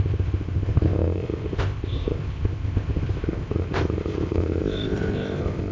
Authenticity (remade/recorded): remade